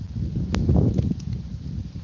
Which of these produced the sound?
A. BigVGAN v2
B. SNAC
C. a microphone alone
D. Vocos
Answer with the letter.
C